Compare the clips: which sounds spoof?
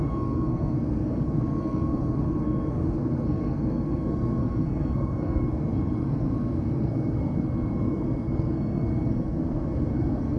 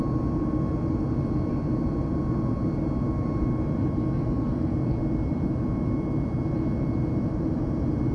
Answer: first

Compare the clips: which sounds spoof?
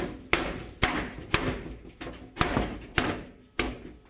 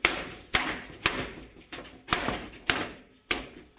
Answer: second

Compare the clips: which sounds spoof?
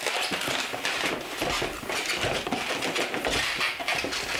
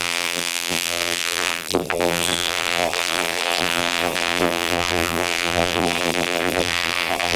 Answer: second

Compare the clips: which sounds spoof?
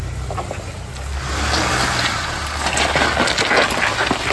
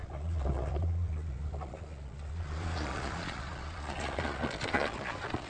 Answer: second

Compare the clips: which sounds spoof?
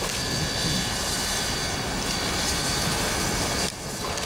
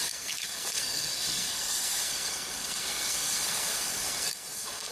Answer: second